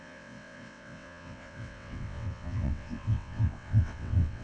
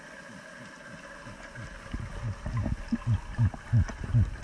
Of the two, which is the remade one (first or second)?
first